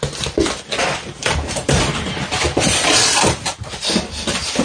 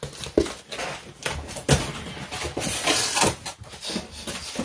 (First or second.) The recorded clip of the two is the second